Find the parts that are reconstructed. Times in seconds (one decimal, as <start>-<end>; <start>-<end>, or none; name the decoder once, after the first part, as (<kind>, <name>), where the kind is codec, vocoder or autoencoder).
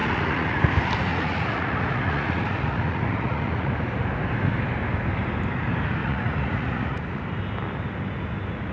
0.0-0.6 (vocoder, Vocos); 1.1-3.7; 6.0-7.2